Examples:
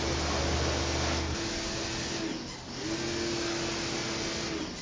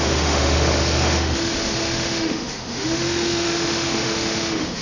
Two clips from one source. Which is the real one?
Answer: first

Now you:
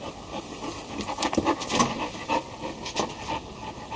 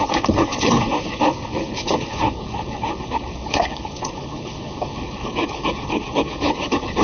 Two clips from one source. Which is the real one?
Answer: first